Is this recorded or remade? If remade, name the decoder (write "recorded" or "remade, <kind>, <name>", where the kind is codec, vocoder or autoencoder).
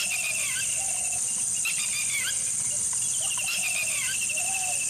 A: remade, vocoder, BigVGAN v2